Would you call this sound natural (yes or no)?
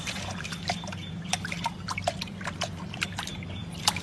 no